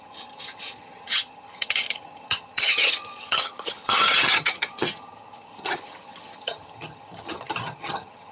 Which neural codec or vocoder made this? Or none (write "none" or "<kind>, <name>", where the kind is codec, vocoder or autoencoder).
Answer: vocoder, HiFi-GAN